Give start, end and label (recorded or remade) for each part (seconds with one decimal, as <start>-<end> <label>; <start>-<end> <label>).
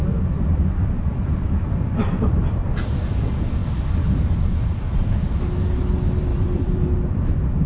0.0-3.1 remade; 3.1-3.6 recorded; 3.6-5.4 remade; 5.4-6.3 recorded; 6.3-7.1 remade; 7.1-7.7 recorded